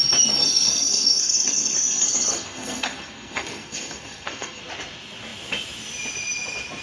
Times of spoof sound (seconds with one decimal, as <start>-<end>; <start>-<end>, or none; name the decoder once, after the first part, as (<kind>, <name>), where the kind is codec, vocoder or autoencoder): 0.5-4.6 (codec, SNAC)